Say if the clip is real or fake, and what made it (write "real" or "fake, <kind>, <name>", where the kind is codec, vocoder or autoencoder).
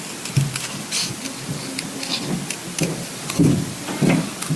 real